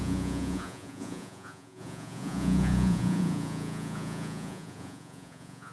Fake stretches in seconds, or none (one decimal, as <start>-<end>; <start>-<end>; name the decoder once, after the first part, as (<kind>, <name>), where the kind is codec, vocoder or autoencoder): 0.0-5.7 (vocoder, Vocos)